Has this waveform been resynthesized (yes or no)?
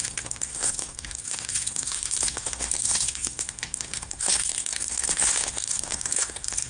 yes